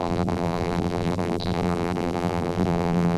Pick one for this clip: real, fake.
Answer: fake